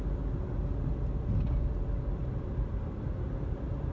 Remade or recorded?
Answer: recorded